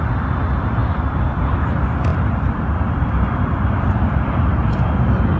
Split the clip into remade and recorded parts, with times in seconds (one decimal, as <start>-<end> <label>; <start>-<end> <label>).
0.0-0.8 recorded; 0.8-1.6 remade; 1.6-2.1 recorded; 2.1-4.3 remade; 4.3-5.4 recorded